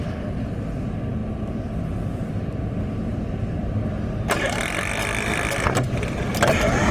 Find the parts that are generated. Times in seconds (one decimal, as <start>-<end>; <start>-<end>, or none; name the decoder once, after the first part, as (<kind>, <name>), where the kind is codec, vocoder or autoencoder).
0.0-6.9 (vocoder, BigVGAN v2)